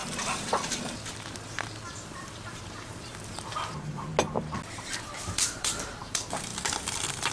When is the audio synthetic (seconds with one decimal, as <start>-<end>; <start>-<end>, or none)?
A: 1.9-4.1; 4.8-7.3